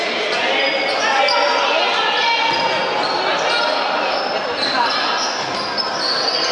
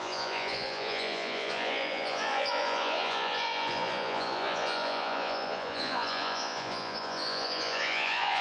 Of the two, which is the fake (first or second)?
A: second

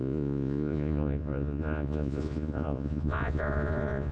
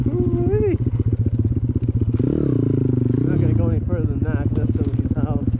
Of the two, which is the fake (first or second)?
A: first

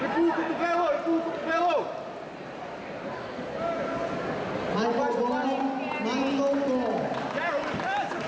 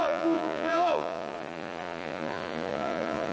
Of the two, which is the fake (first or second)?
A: second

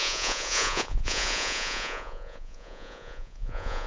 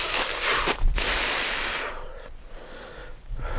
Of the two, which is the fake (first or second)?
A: first